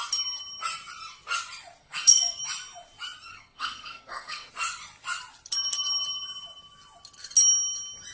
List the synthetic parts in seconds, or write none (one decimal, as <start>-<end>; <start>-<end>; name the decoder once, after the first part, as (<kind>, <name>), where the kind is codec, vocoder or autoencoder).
1.8-2.4 (codec, SNAC); 3.3-4.5